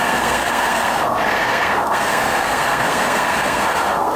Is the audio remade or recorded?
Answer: remade